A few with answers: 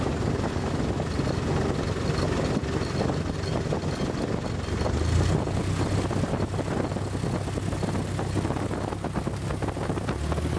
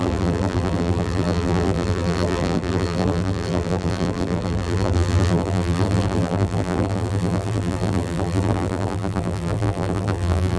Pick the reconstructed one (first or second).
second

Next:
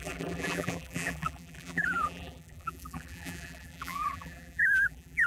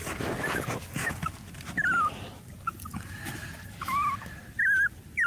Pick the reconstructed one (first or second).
first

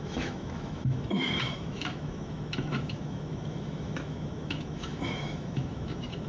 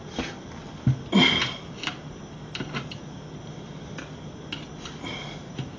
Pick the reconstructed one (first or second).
first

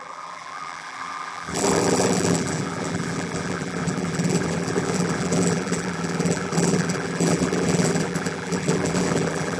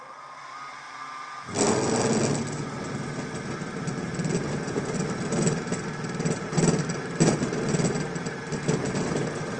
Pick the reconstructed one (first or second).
first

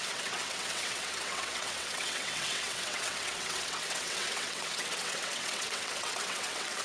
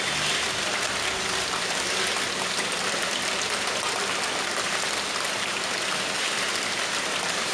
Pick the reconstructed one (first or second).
first